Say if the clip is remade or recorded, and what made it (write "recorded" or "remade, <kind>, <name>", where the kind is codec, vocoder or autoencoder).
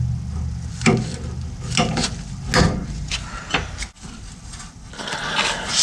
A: recorded